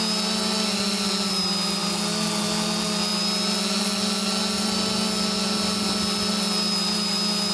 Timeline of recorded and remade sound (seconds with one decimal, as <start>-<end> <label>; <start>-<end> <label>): 0.0-7.5 recorded